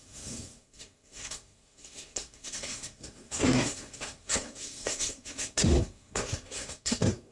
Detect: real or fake fake